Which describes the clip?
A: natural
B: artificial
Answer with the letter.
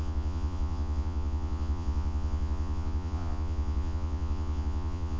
B